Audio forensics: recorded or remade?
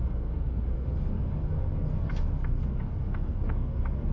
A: remade